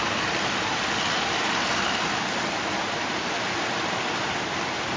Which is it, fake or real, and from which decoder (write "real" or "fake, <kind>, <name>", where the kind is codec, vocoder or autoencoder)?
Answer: fake, vocoder, BigVGAN v2